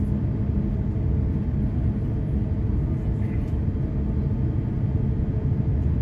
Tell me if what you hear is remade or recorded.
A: recorded